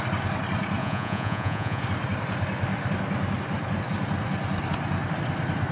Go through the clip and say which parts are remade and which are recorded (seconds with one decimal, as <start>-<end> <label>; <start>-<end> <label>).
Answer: 0.0-0.8 recorded; 0.8-1.8 remade; 1.8-5.7 recorded